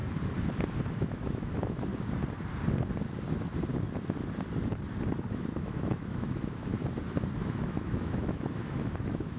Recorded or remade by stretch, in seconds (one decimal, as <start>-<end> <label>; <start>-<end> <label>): 0.0-0.9 recorded; 0.9-1.9 remade; 1.9-5.3 recorded; 5.3-6.7 remade; 6.7-7.4 recorded; 7.4-9.4 remade